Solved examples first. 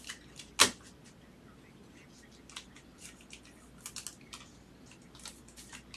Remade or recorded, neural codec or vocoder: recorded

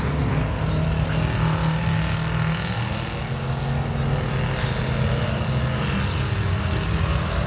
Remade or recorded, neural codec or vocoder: recorded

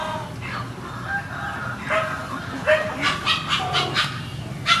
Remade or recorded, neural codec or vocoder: recorded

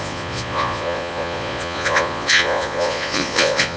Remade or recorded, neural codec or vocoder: remade, vocoder, Vocos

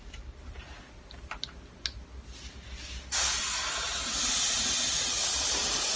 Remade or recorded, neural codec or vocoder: recorded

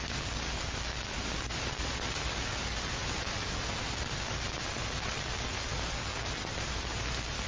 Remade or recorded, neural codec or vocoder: recorded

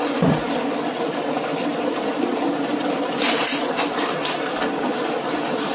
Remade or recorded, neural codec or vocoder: recorded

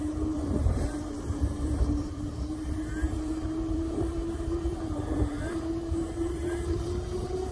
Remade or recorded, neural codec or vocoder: remade, vocoder, BigVGAN v2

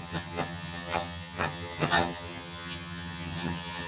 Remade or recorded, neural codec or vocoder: remade, vocoder, HiFi-GAN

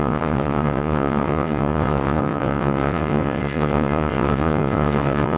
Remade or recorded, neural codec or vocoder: remade, vocoder, WaveNeXt